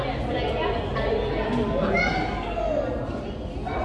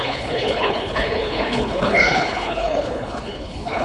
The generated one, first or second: second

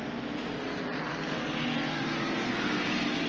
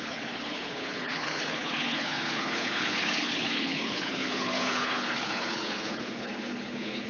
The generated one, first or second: second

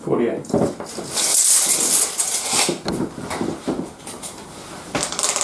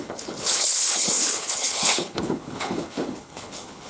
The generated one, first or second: second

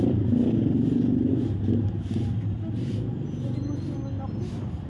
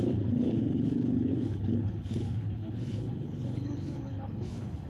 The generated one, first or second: second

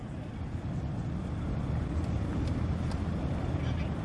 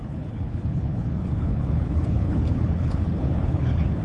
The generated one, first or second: second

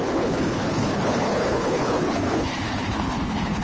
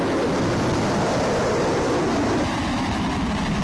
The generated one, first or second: first